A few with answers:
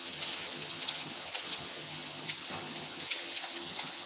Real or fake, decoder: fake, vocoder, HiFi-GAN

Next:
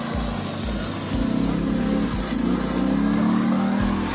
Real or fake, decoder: real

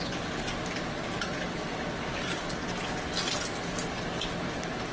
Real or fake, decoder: real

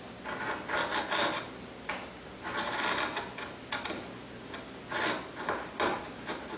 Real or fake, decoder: real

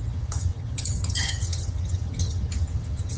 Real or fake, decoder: fake, vocoder, HiFi-GAN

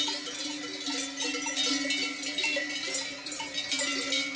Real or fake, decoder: real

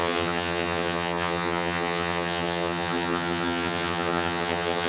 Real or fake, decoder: fake, vocoder, HiFi-GAN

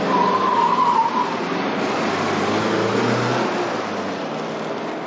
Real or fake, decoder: real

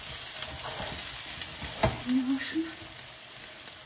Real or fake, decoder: real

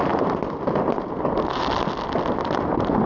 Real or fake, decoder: real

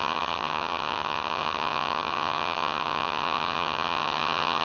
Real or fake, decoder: fake, vocoder, HiFi-GAN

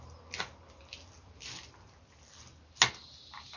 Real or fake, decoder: real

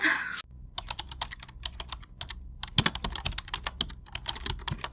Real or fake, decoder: real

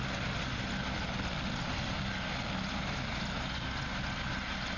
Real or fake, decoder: real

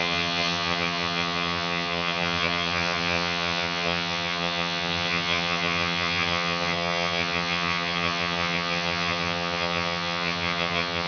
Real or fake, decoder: fake, vocoder, HiFi-GAN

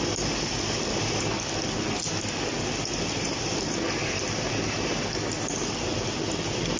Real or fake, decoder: real